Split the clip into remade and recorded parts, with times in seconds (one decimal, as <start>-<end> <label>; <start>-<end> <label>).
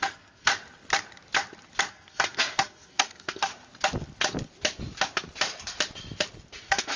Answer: 0.0-0.5 remade; 0.5-1.9 recorded; 1.9-3.5 remade; 3.5-6.6 recorded; 6.6-7.0 remade